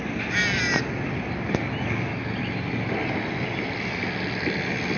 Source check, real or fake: real